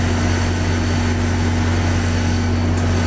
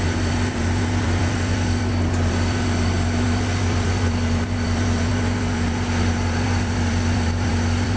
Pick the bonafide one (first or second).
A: first